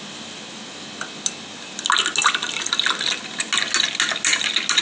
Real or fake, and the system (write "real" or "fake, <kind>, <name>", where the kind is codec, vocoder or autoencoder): real